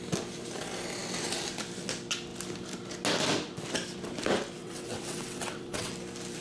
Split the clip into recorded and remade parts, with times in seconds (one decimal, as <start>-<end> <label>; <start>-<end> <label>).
0.0-4.6 recorded; 4.6-5.9 remade; 5.9-6.4 recorded